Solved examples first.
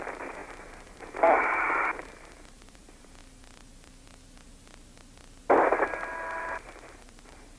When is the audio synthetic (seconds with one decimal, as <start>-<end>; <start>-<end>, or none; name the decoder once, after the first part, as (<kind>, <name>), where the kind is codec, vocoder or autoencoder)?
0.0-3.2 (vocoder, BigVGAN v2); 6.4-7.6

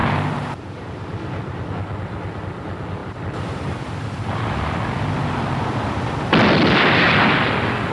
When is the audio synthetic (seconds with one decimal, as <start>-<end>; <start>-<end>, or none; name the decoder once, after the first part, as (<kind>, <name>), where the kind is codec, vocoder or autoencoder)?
0.0-1.7 (vocoder, BigVGAN v2); 3.0-6.0

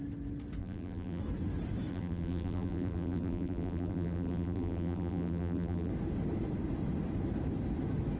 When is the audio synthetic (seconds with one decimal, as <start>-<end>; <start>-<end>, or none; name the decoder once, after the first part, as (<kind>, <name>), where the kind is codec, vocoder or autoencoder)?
0.6-1.2 (vocoder, BigVGAN v2); 1.9-5.9